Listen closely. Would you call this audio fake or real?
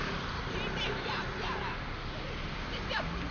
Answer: real